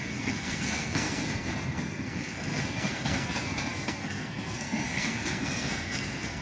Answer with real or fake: fake